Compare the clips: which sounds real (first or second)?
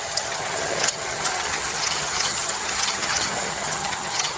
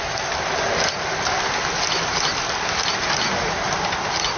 second